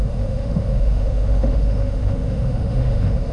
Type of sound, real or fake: fake